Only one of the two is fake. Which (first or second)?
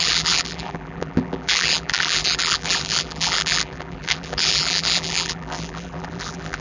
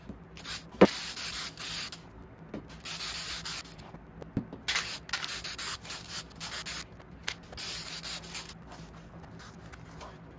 first